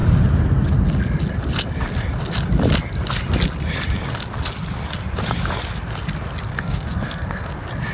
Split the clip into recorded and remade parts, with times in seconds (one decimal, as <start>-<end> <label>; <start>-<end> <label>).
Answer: 0.0-6.5 recorded; 6.5-7.5 remade; 7.5-7.9 recorded